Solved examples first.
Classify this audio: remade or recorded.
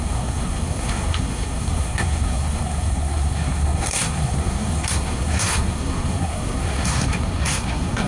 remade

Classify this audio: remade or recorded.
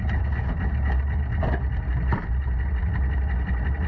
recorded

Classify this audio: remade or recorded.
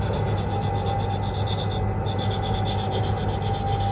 recorded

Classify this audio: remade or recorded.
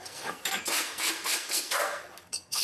remade